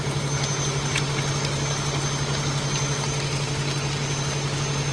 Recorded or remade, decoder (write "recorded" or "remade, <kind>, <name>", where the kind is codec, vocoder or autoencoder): recorded